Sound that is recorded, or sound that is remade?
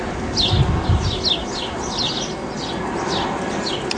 recorded